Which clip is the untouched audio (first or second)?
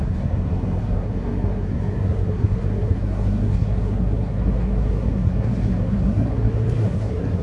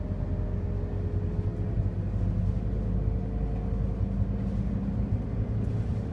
second